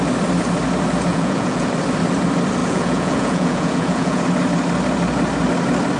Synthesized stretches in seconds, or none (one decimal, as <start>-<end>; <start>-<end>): 1.1-1.7; 2.6-4.2